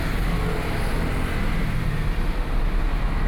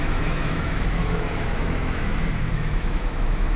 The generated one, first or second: second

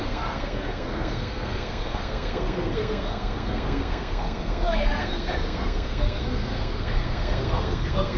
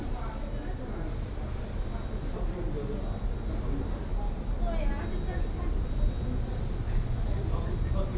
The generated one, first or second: first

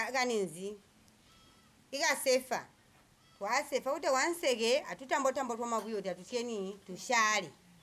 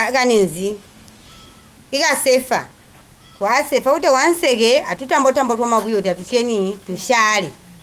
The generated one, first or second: second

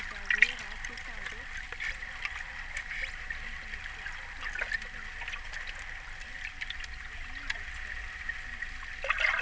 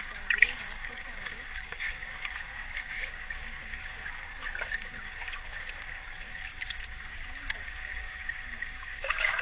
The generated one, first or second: second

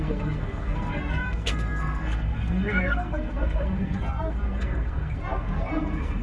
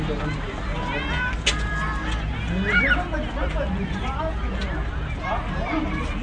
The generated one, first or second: first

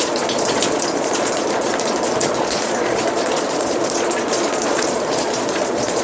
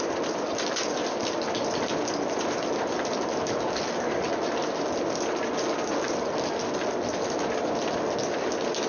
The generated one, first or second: first